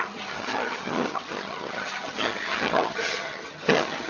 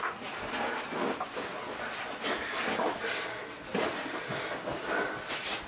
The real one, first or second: second